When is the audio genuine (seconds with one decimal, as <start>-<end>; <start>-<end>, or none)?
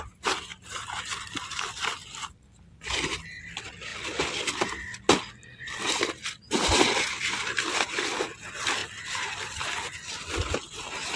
0.0-0.5; 3.0-11.2